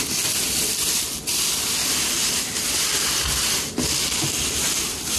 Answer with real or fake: real